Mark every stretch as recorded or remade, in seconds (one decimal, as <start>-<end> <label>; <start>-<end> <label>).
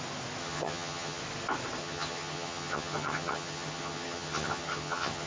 0.0-0.4 recorded; 0.4-1.2 remade; 1.2-1.8 recorded; 1.8-5.3 remade